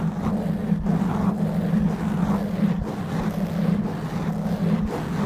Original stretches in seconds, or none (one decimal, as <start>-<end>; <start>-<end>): 0.0-5.3

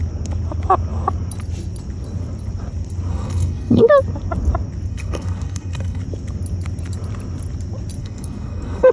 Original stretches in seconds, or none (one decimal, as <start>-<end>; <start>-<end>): 0.0-3.1; 3.9-4.9; 6.0-8.0

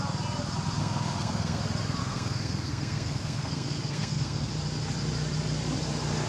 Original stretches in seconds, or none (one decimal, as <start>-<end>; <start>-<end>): 0.0-0.8; 1.6-2.0; 4.5-6.3

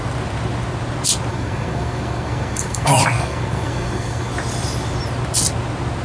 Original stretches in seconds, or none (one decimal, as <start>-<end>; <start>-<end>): 0.0-1.3; 4.3-6.0

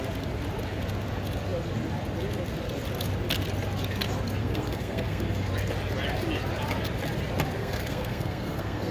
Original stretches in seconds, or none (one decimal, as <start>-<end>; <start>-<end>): 0.0-4.4; 5.5-7.6